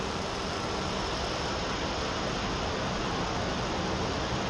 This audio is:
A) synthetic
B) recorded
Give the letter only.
B